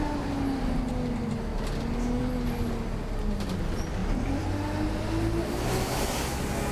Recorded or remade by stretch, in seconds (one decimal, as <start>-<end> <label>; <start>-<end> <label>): 0.0-6.7 recorded